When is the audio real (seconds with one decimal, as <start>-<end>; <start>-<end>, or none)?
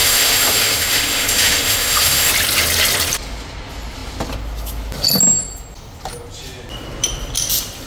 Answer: 2.3-7.9